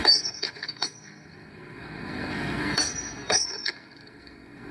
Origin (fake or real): fake